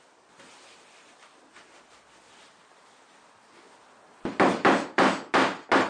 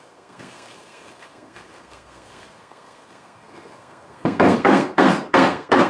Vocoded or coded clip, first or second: second